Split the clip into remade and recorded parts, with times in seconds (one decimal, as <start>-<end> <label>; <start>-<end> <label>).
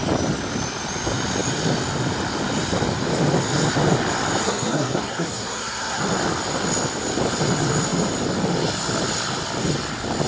0.0-4.4 recorded; 4.4-6.0 remade; 6.0-10.3 recorded